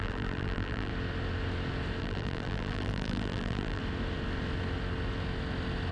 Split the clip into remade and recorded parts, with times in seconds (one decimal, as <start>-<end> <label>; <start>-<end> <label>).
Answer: 0.0-0.9 remade; 0.9-2.0 recorded; 2.0-3.8 remade; 3.8-5.9 recorded